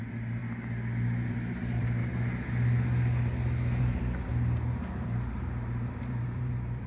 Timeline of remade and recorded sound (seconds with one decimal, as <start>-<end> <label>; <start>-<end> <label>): 0.0-0.4 remade; 0.4-1.3 recorded; 1.3-2.0 remade; 2.0-3.8 recorded; 3.8-4.3 remade; 4.3-4.8 recorded; 4.8-6.9 remade